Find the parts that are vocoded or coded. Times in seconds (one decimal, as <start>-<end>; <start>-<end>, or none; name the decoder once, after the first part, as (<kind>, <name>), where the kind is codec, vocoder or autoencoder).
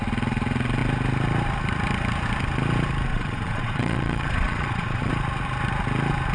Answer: 3.1-5.1 (vocoder, Vocos)